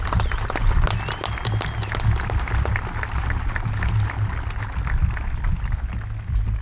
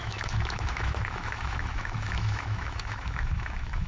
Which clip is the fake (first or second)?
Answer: second